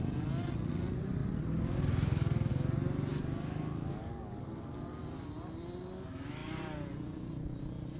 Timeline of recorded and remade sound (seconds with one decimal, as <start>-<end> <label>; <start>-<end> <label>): 0.0-3.1 recorded; 3.1-5.0 remade; 5.0-8.0 recorded

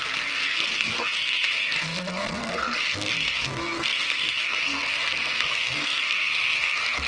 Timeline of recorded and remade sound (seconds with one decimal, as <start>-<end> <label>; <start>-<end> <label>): 0.0-7.1 remade

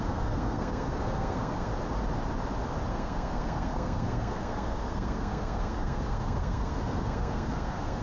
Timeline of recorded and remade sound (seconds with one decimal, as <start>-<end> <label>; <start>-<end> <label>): 0.0-1.7 remade; 1.7-2.9 recorded; 2.9-8.0 remade

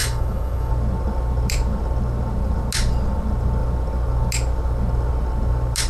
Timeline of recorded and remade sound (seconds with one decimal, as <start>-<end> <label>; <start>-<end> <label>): 0.0-0.7 remade; 0.7-5.9 recorded

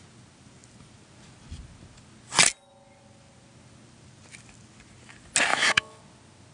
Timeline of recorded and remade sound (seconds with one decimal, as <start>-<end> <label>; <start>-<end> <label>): 0.0-5.5 recorded; 5.5-6.0 remade; 6.0-6.5 recorded

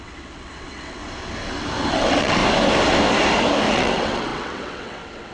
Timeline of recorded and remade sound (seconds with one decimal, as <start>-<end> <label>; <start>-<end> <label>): 0.0-1.0 remade; 1.0-1.9 recorded; 1.9-2.4 remade; 2.4-3.7 recorded; 3.7-5.3 remade